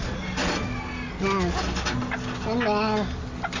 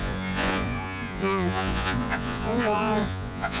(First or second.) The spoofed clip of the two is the second